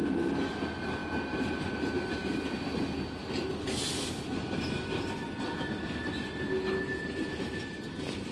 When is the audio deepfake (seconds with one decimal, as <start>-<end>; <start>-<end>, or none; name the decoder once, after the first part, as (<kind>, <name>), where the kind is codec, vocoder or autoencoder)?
none